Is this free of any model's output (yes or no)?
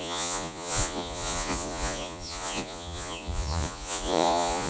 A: no